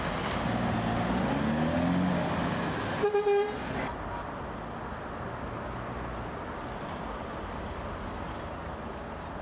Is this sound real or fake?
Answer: real